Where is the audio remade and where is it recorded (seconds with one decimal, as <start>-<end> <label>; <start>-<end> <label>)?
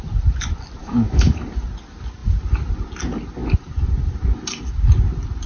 0.0-0.8 recorded; 0.8-1.4 remade; 1.4-5.5 recorded